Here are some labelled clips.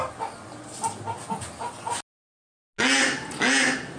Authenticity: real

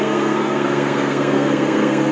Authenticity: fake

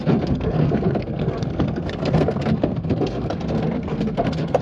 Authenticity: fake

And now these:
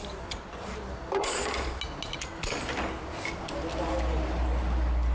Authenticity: real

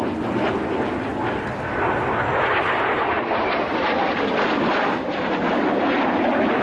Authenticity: real